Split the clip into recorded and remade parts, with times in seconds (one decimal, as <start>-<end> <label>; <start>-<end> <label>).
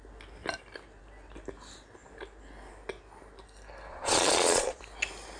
0.0-3.9 recorded; 3.9-4.8 remade; 4.8-5.4 recorded